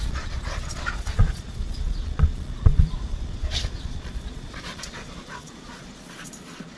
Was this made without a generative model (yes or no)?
no